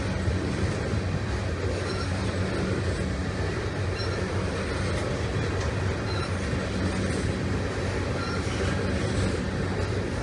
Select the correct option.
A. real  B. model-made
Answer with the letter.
A